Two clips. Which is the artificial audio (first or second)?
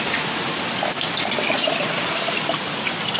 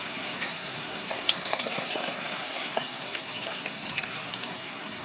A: second